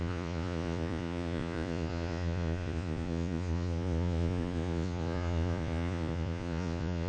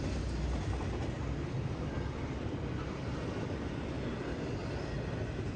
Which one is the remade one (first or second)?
first